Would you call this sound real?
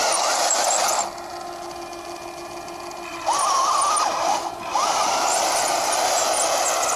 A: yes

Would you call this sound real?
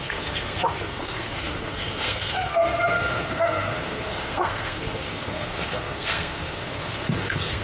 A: no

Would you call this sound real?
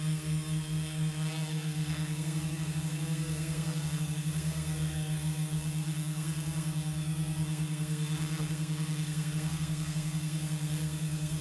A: no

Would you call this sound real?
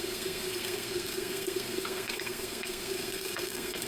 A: no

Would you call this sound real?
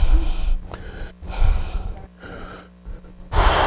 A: yes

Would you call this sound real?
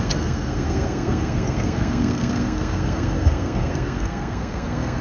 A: no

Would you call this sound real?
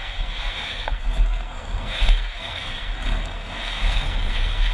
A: no